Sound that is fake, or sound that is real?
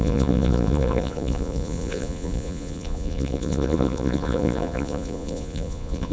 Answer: fake